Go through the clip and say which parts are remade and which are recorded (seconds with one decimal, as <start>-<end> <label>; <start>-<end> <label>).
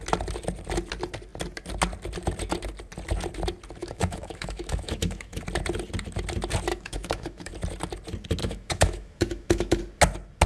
0.0-3.8 recorded; 3.8-5.4 remade; 5.4-6.7 recorded; 6.7-7.5 remade; 7.5-8.4 recorded; 8.4-9.8 remade; 9.8-10.5 recorded